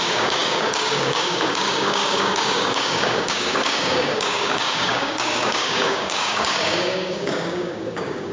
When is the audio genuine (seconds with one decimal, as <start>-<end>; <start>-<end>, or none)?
none